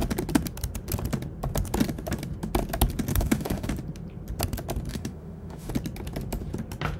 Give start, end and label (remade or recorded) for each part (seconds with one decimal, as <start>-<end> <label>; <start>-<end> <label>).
0.0-3.1 recorded; 3.1-3.7 remade; 3.7-4.9 recorded; 4.9-5.7 remade; 5.7-7.0 recorded